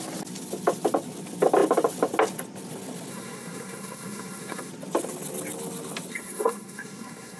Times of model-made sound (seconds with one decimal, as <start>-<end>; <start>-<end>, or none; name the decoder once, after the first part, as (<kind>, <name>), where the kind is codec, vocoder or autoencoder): 3.1-4.7 (codec, SNAC); 6.1-7.4